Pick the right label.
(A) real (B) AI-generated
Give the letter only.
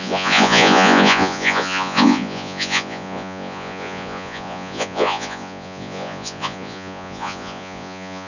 B